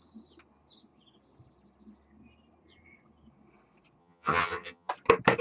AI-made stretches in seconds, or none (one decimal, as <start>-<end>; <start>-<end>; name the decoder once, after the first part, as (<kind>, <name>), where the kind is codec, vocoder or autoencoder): 4.0-4.9 (vocoder, HiFi-GAN)